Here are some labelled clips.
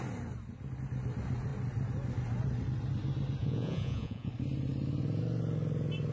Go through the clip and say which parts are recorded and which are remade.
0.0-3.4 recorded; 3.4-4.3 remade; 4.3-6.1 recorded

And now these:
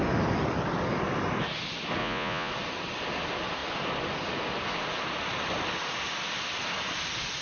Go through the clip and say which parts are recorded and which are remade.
0.0-2.0 recorded; 2.0-2.5 remade; 2.5-7.4 recorded